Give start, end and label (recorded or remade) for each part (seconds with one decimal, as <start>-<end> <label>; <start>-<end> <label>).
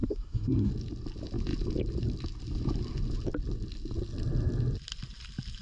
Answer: 0.0-0.7 remade; 0.7-5.6 recorded